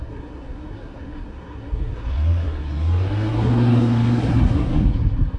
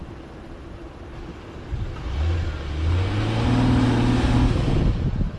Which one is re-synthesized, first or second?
first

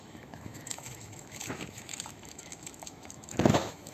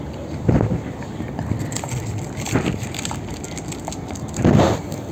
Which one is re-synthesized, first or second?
first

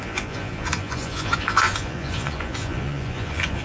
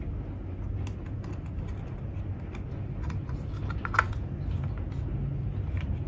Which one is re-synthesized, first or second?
first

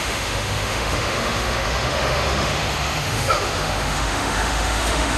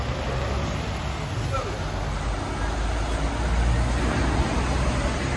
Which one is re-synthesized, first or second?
first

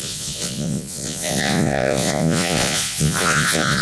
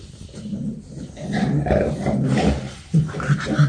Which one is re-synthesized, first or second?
first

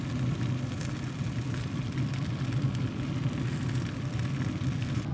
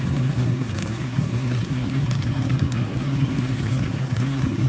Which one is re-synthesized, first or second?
second